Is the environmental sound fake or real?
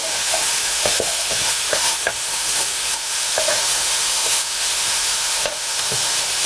fake